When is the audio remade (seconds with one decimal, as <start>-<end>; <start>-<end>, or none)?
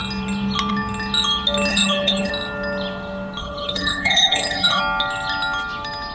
1.7-2.3; 3.4-4.8